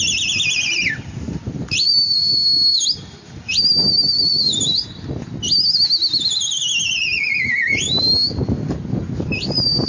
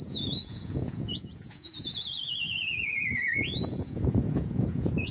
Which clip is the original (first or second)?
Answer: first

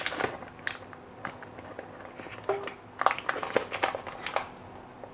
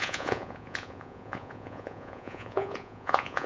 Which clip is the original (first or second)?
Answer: first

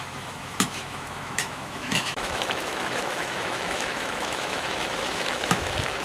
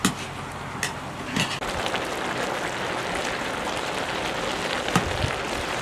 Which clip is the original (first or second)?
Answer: second